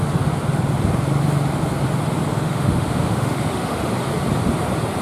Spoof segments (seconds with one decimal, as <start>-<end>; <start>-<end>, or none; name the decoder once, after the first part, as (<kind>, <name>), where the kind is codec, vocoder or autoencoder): 2.3-3.9 (autoencoder, DAC-VAE)

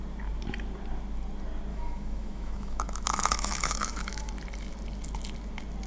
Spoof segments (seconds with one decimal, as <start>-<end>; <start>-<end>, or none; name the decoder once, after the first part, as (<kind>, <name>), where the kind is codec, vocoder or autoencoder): 1.7-4.3 (autoencoder, DAC-VAE)

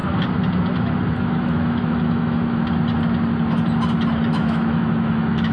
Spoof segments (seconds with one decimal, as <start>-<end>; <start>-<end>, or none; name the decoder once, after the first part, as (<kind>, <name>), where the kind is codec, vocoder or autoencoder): 1.2-2.6 (autoencoder, DAC-VAE); 4.3-5.5

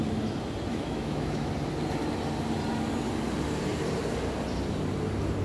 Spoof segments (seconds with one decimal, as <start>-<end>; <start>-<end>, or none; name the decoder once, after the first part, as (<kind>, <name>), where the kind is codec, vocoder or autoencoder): 0.7-1.5 (autoencoder, DAC-VAE)

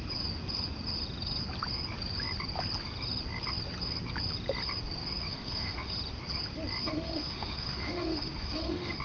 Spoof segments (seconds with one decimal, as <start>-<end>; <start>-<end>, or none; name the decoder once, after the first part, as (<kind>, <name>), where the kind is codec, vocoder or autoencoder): 5.3-5.9 (autoencoder, DAC-VAE); 6.8-9.0

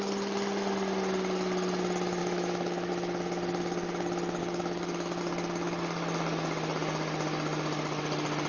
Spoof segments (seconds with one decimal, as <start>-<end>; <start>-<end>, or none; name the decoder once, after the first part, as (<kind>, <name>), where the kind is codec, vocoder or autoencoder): 2.2-2.9 (autoencoder, DAC-VAE); 4.4-5.2